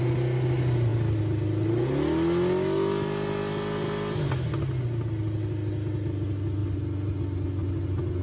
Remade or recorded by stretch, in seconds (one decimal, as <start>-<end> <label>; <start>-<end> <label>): 0.0-8.2 recorded